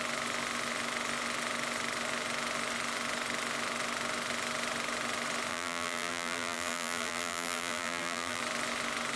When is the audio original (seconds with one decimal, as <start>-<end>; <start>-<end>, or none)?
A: 0.0-5.5; 8.4-9.2